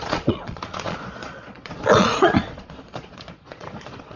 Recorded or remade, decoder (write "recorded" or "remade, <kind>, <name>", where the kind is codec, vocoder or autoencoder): remade, vocoder, Vocos